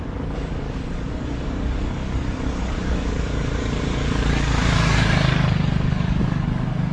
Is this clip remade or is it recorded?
remade